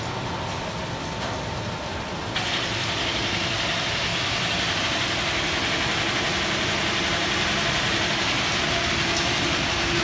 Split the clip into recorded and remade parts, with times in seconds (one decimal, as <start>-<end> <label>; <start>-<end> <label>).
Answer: 0.0-10.0 recorded